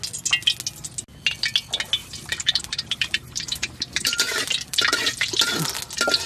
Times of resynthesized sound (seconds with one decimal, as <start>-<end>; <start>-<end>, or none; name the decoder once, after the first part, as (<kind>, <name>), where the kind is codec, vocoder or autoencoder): 2.0-4.5 (vocoder, BigVGAN v2)